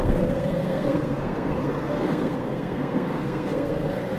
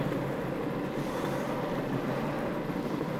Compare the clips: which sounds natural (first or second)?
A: second